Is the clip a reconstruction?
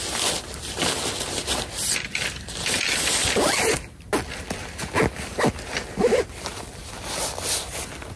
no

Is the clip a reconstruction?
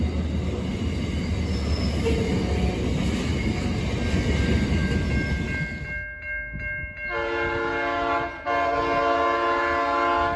no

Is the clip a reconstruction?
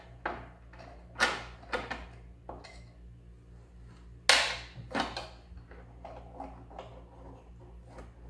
no